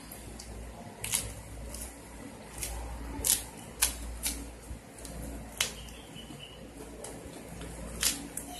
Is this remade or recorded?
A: recorded